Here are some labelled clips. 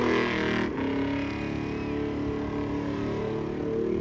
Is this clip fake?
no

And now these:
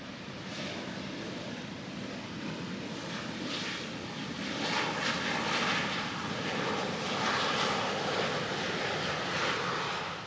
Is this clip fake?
no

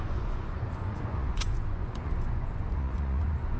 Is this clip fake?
yes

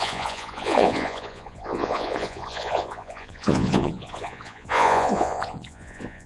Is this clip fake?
yes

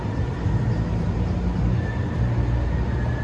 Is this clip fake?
no